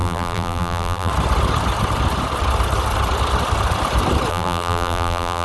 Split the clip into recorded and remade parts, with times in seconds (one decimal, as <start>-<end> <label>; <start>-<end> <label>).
0.0-1.1 remade; 1.1-4.3 recorded; 4.3-5.4 remade